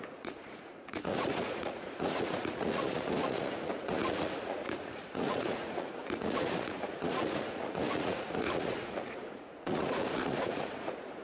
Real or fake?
fake